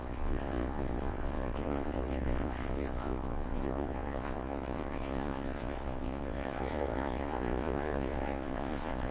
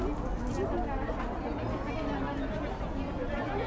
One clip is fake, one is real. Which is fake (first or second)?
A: first